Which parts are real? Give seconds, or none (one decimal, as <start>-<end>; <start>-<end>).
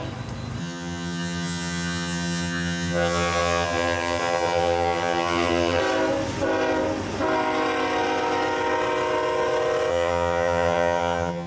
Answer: 0.0-0.6; 5.8-9.9